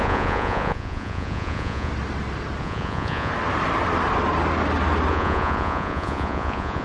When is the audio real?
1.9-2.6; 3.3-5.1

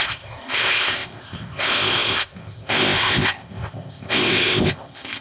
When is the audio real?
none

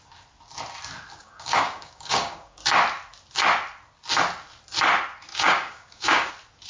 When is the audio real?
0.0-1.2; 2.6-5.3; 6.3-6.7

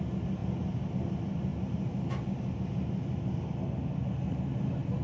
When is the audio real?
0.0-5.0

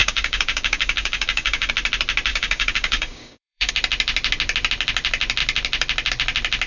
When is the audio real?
1.7-2.3; 3.7-6.7

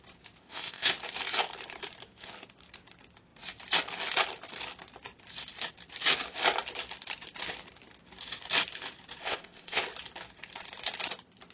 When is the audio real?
0.0-0.4; 0.9-9.2; 9.8-11.5

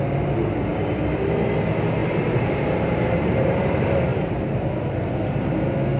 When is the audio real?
0.0-0.7; 1.5-2.0; 3.3-4.1; 5.1-6.0

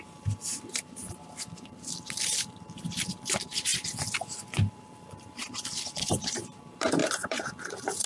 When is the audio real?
3.7-4.4; 5.4-6.1